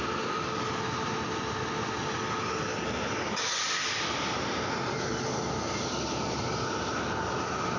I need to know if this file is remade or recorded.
recorded